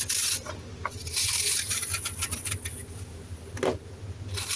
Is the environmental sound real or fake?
real